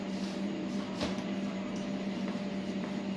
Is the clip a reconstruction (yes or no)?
yes